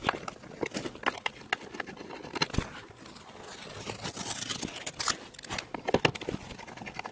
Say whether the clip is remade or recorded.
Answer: recorded